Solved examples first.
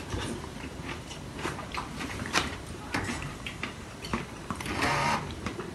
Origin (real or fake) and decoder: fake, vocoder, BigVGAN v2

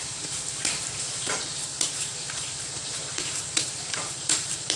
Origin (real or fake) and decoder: fake, vocoder, BigVGAN v2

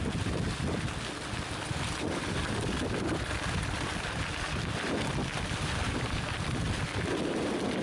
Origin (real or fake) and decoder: real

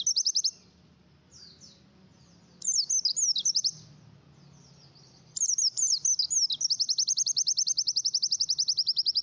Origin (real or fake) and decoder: real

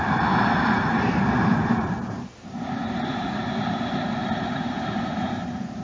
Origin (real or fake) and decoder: fake, vocoder, BigVGAN v2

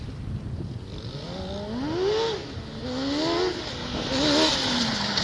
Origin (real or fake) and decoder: real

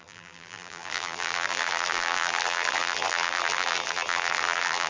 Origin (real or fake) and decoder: fake, vocoder, BigVGAN v2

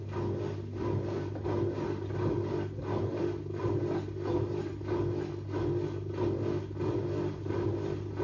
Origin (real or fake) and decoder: real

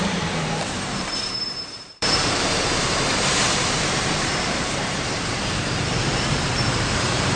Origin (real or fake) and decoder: fake, vocoder, BigVGAN v2